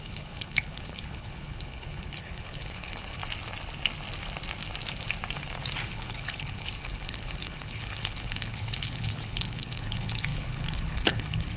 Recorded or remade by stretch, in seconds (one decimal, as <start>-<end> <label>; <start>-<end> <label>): 0.0-3.2 remade; 3.2-5.8 recorded; 5.8-11.6 remade